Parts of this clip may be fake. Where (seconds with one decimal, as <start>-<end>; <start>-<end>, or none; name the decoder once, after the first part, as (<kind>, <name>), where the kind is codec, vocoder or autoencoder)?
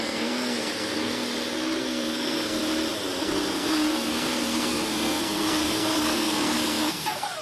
0.0-1.2 (codec, SNAC); 1.8-2.6; 3.2-7.4